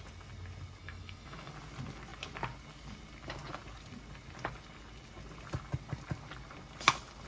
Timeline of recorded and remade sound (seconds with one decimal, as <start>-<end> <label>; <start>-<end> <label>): 0.0-0.8 recorded; 0.8-1.5 remade; 1.5-7.3 recorded

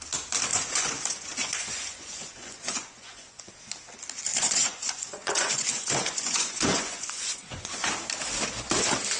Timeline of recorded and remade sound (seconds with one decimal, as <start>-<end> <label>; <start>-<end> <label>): 0.0-0.5 recorded; 0.5-3.5 remade; 3.5-4.3 recorded; 4.3-7.9 remade; 7.9-9.2 recorded

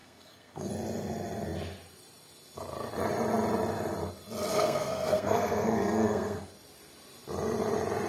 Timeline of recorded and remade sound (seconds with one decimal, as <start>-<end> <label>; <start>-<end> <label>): 0.0-0.7 remade; 0.7-4.5 recorded; 4.5-6.5 remade; 6.5-8.1 recorded